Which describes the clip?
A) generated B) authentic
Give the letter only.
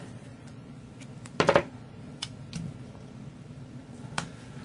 A